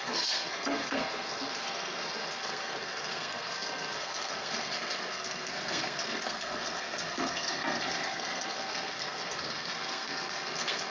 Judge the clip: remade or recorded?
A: remade